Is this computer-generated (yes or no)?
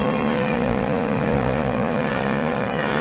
yes